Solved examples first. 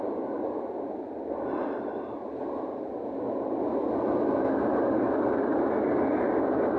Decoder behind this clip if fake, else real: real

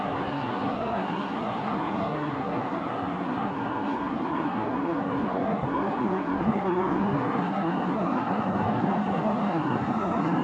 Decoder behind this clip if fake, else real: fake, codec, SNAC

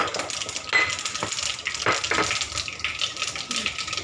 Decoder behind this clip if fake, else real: real